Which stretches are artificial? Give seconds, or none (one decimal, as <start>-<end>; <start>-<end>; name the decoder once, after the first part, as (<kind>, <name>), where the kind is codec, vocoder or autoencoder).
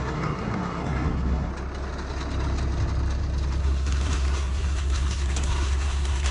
0.0-1.5 (codec, SNAC); 3.6-6.3